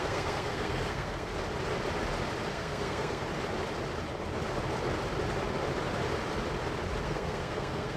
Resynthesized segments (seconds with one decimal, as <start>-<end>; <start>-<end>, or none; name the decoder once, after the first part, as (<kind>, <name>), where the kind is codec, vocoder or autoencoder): 0.0-1.3 (codec, SNAC); 2.5-3.2; 7.0-8.0